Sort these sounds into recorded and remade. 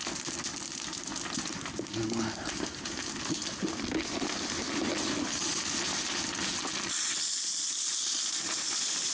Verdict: recorded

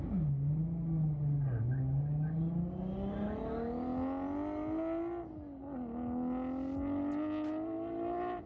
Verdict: recorded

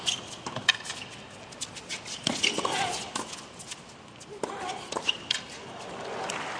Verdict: recorded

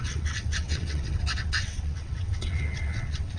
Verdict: remade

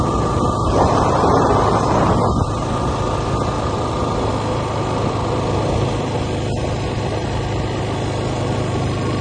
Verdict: recorded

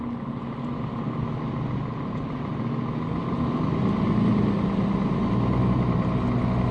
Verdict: recorded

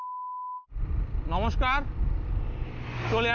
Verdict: recorded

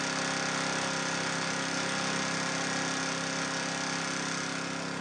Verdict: recorded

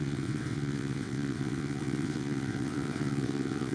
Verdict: remade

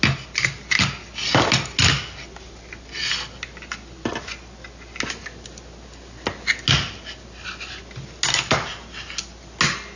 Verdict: recorded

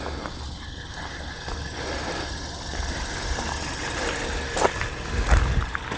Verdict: recorded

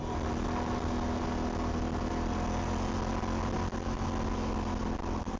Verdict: recorded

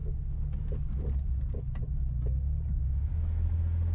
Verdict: recorded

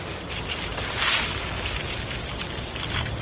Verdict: recorded